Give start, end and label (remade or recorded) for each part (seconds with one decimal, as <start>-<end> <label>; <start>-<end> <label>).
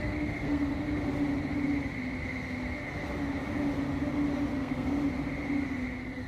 0.0-0.7 remade; 0.7-4.5 recorded; 4.5-4.9 remade; 4.9-6.3 recorded